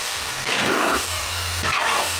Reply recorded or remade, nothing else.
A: remade